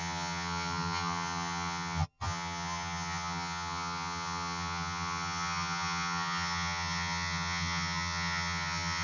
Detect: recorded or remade remade